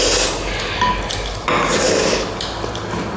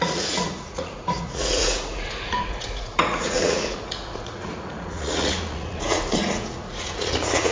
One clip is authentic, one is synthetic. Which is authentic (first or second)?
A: first